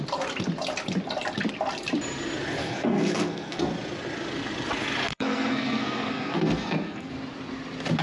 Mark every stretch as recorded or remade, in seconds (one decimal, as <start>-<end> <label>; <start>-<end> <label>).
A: 0.0-2.6 recorded; 2.6-3.7 remade; 3.7-5.1 recorded; 5.1-7.1 remade; 7.1-8.0 recorded